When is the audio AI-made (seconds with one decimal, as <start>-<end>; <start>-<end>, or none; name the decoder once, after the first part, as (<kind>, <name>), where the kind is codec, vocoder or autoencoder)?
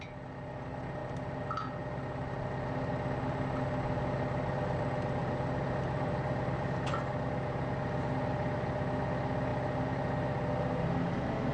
5.2-6.5 (vocoder, BigVGAN v2)